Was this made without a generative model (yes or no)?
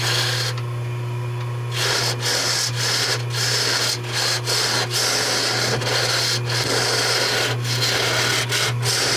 yes